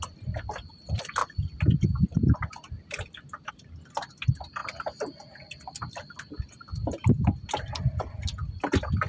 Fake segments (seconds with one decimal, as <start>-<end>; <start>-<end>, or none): none